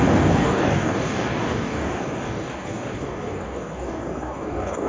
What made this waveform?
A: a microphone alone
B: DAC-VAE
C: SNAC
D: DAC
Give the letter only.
D